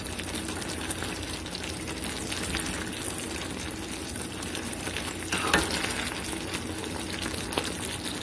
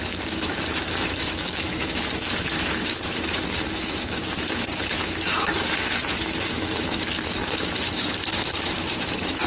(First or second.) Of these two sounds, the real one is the first